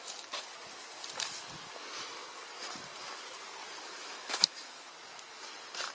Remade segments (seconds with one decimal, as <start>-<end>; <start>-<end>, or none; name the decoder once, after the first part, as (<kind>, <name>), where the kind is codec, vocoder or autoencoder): 4.0-4.9 (autoencoder, DAC-VAE)